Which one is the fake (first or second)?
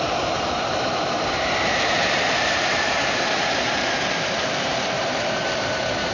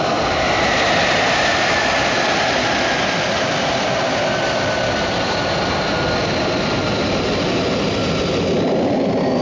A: first